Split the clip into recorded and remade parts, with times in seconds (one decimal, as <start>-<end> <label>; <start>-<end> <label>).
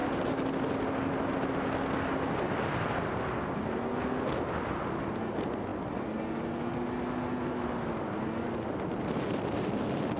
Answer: 0.0-10.2 recorded